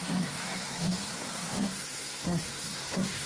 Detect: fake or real fake